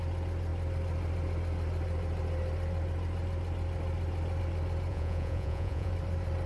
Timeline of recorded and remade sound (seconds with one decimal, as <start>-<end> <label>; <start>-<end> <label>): 0.0-4.9 recorded; 4.9-5.9 remade; 5.9-6.5 recorded